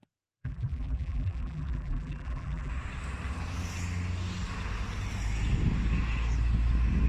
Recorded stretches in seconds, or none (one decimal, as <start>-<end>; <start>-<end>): 2.7-7.1